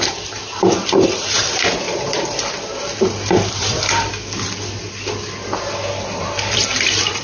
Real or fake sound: fake